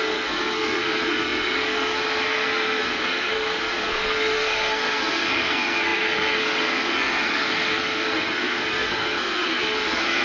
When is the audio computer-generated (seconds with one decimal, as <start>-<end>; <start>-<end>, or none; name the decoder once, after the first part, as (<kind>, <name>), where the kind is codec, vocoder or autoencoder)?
0.0-10.2 (codec, SNAC)